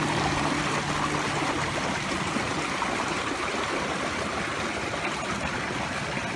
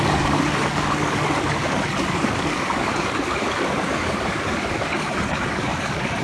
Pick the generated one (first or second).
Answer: second